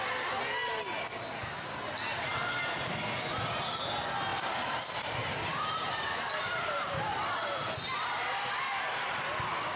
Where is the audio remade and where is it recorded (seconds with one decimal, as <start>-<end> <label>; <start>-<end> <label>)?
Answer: 0.0-4.3 recorded; 4.3-7.7 remade; 7.7-9.8 recorded